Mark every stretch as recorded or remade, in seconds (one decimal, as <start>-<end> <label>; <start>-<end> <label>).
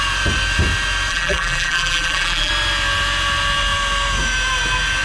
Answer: 0.0-1.1 recorded; 1.1-2.5 remade; 2.5-5.0 recorded